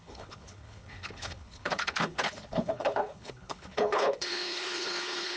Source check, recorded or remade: remade